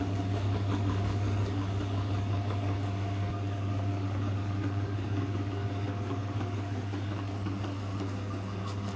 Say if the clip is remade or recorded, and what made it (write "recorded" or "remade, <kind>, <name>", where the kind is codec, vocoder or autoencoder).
remade, codec, DAC